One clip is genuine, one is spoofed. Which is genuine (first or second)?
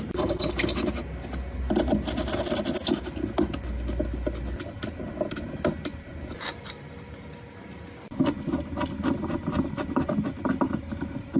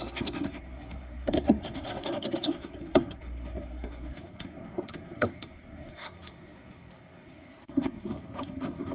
first